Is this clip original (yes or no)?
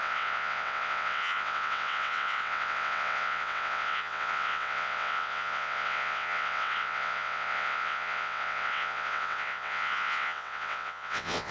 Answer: no